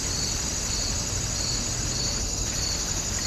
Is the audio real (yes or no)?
yes